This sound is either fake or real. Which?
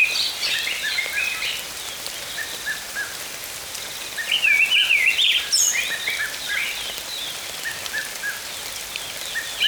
real